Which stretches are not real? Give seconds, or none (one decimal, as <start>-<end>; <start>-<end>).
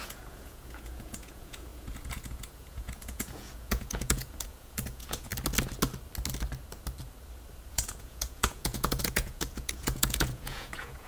0.0-5.3; 7.7-11.1